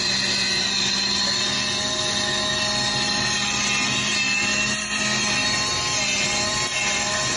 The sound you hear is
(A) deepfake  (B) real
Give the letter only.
B